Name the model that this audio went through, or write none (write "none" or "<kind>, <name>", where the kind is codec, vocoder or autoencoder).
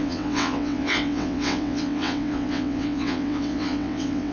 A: vocoder, WaveNeXt